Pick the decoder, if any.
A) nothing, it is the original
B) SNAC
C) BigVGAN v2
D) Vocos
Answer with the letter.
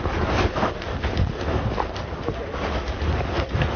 A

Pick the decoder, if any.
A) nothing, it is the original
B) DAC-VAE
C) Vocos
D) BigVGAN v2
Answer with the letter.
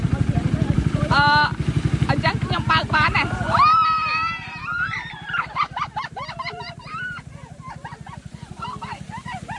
D